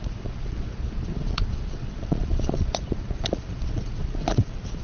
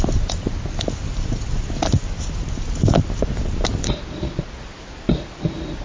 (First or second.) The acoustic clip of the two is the second